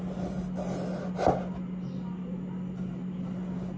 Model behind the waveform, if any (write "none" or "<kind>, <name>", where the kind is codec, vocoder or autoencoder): none